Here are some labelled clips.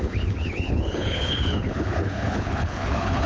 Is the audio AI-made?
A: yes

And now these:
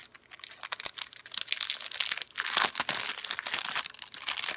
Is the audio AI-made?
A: no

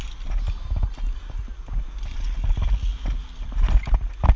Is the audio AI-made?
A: no